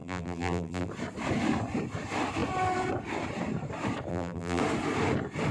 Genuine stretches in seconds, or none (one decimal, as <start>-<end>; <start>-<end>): 0.9-4.1; 4.6-5.5